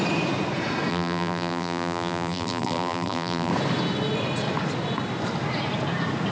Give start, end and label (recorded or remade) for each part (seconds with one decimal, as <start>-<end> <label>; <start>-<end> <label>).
0.0-0.9 recorded; 0.9-3.5 remade; 3.5-6.3 recorded